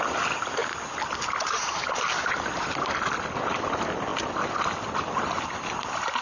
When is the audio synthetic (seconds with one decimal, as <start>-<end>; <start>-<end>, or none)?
none